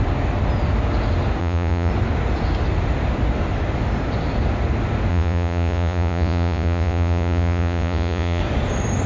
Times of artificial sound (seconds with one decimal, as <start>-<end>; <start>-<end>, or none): 1.4-1.9; 5.1-8.4